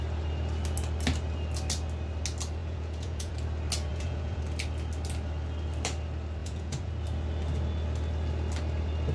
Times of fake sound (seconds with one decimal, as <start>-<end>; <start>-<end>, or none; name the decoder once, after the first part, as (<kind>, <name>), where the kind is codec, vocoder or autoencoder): 2.6-3.3 (vocoder, Vocos); 3.9-4.4; 6.4-6.9